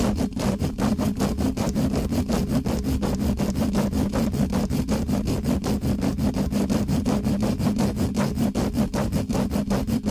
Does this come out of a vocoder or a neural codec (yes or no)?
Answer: no